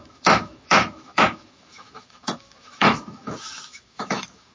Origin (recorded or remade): remade